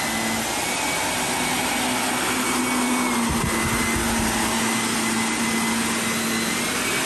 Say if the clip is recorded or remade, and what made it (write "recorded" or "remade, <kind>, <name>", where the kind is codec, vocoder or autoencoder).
recorded